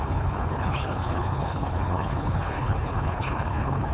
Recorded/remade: remade